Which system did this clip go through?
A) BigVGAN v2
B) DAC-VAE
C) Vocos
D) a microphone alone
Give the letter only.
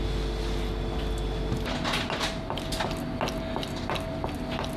D